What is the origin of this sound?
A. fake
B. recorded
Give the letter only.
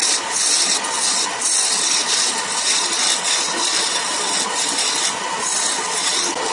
B